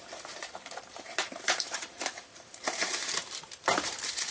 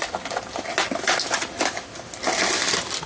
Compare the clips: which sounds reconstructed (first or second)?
first